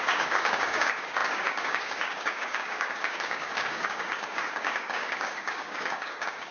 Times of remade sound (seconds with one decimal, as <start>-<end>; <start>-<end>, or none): 0.0-6.5